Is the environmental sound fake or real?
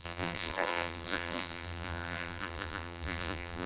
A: fake